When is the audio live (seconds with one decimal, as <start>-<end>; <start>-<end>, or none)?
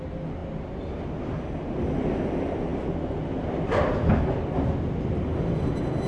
0.0-6.1